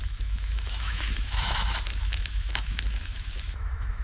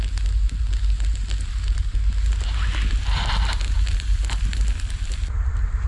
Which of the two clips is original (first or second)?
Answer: second